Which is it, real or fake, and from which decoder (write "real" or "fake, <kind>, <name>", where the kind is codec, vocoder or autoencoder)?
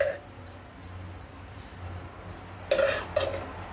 real